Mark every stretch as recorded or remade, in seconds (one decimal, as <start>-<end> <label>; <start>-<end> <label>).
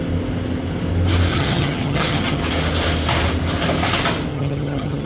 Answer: 0.0-1.3 recorded; 1.3-2.4 remade; 2.4-4.3 recorded; 4.3-5.1 remade